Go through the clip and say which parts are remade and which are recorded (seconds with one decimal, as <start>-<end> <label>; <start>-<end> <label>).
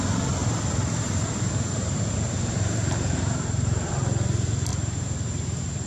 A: 0.0-0.4 recorded; 0.4-3.9 remade; 3.9-4.7 recorded; 4.7-5.9 remade